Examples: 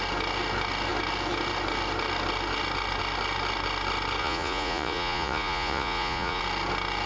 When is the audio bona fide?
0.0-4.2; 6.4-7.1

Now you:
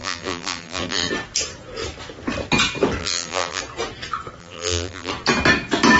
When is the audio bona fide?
1.1-3.0; 3.6-4.4; 5.1-6.0

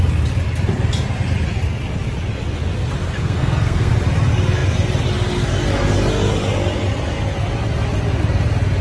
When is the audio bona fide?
0.0-3.2; 3.9-8.8